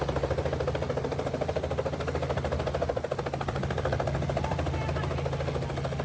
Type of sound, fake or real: real